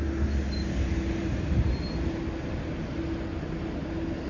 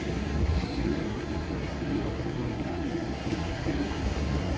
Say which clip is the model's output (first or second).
second